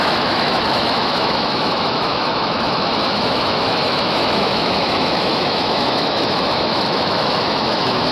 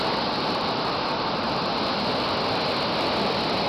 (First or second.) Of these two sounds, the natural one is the second